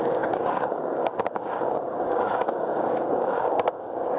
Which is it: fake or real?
fake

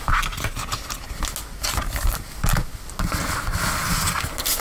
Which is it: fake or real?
real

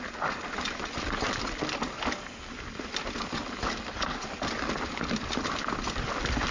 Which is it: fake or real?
real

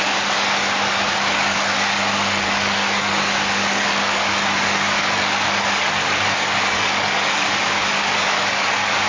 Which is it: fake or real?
fake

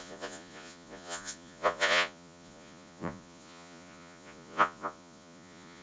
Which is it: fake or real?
fake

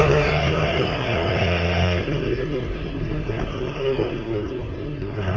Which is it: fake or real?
fake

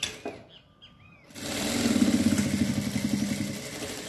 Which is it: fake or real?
real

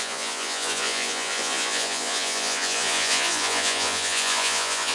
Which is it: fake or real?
fake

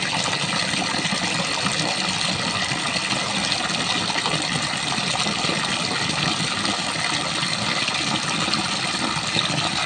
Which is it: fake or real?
real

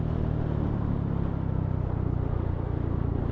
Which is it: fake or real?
real